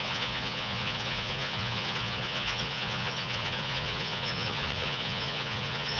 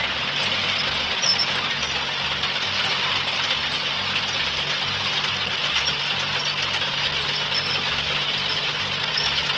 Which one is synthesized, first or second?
first